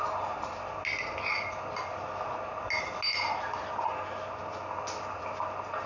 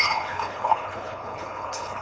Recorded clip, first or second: first